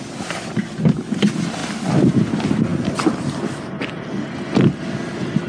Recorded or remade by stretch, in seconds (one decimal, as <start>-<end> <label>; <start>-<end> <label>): 0.0-5.5 recorded